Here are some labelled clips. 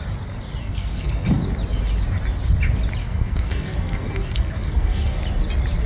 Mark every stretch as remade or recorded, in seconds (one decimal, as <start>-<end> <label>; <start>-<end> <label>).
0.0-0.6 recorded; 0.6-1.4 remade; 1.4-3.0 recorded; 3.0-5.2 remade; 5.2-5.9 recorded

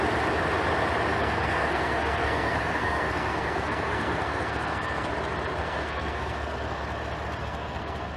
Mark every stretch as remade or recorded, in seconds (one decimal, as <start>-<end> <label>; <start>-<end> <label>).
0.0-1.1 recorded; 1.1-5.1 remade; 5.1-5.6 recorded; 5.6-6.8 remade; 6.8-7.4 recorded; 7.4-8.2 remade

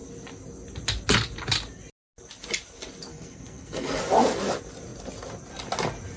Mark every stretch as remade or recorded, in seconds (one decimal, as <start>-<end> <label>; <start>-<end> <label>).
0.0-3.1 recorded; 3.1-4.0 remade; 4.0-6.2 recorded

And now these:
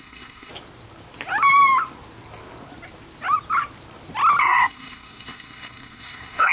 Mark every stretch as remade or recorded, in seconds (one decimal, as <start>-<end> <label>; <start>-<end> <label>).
0.0-0.5 remade; 0.5-4.4 recorded; 4.4-6.5 remade

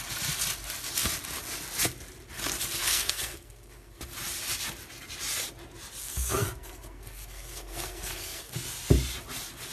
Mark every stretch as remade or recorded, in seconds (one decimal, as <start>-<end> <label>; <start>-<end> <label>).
0.0-2.8 recorded; 2.8-4.0 remade; 4.0-6.0 recorded; 6.0-8.5 remade; 8.5-9.7 recorded